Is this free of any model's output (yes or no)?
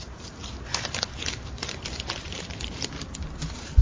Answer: no